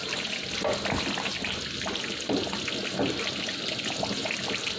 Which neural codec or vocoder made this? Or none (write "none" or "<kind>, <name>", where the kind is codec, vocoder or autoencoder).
none